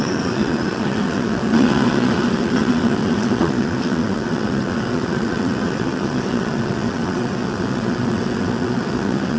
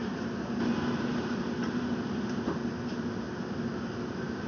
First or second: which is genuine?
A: second